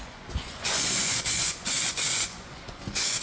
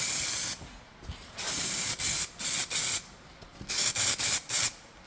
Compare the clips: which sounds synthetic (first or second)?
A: first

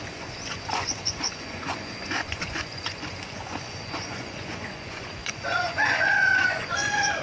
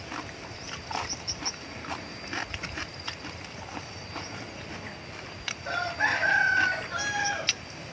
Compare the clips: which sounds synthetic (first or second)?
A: first